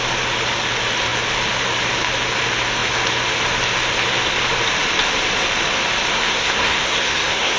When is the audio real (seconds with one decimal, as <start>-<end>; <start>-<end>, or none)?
0.0-6.1